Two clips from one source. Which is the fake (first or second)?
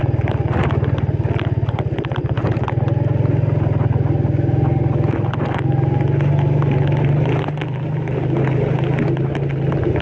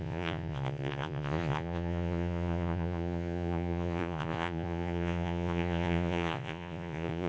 second